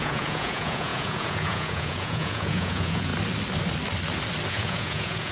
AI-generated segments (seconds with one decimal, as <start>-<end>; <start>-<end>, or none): 0.0-3.1; 4.5-5.3